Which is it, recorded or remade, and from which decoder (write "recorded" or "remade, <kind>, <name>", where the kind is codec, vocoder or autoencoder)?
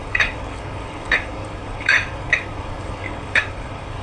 remade, codec, DAC